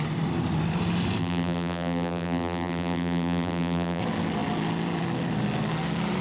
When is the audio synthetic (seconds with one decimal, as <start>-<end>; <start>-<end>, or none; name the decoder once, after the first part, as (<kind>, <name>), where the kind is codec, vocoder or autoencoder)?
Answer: 1.2-4.0 (vocoder, BigVGAN v2)